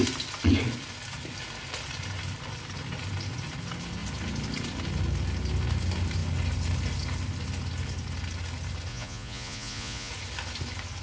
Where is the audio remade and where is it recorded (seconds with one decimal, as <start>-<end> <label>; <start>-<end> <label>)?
0.0-8.9 recorded; 8.9-10.1 remade; 10.1-11.0 recorded